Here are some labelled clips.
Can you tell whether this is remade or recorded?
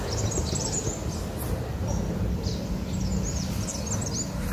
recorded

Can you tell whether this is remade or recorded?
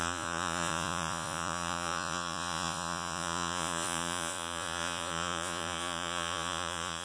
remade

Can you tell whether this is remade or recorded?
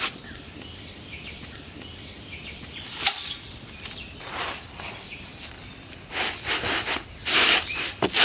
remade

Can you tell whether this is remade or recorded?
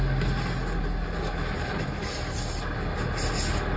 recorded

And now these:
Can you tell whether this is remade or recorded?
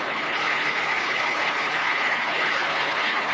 remade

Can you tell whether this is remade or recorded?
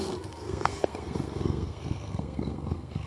remade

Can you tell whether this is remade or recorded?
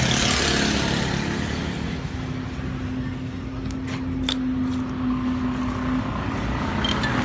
recorded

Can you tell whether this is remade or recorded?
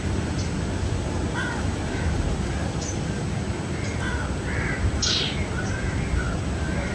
recorded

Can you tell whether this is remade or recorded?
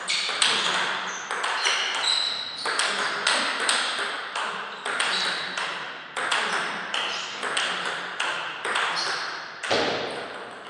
recorded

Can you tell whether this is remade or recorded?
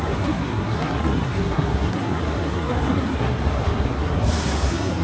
remade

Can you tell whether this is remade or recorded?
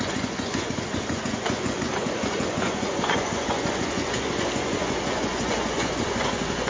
remade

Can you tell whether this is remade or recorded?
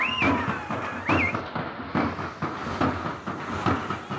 recorded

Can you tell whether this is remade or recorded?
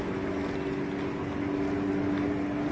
recorded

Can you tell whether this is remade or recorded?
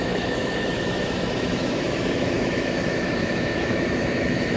remade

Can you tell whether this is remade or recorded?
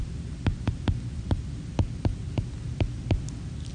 recorded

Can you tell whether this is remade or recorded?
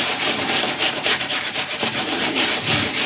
remade